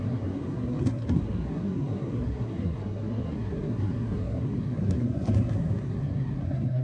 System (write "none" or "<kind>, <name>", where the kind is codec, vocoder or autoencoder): codec, SNAC